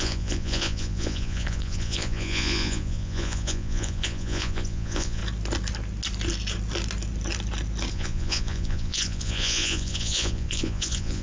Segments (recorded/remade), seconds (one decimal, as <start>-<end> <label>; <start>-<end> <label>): 0.0-5.2 remade; 5.2-7.9 recorded; 7.9-11.2 remade